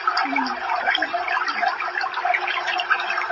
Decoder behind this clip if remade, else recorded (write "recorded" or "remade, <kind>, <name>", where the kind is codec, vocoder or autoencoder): recorded